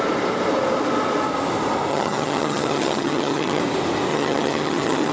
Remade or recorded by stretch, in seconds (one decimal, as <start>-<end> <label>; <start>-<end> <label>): 0.0-1.9 recorded; 1.9-3.6 remade; 3.6-4.1 recorded; 4.1-5.1 remade